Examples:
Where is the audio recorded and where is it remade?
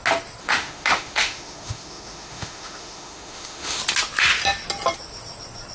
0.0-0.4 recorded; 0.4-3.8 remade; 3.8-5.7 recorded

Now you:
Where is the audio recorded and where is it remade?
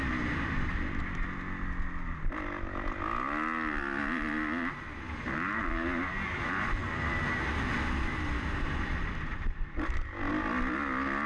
0.0-11.3 recorded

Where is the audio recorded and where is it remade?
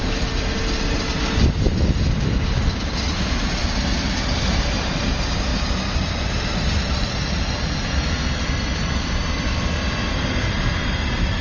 0.0-11.4 recorded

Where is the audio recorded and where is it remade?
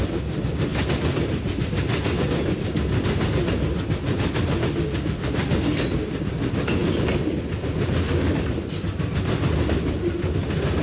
0.0-10.8 recorded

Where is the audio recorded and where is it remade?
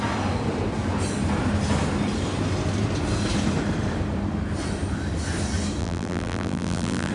0.0-5.8 recorded; 5.8-7.1 remade